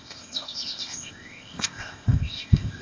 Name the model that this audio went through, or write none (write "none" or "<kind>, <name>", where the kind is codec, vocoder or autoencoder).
codec, ZipCodec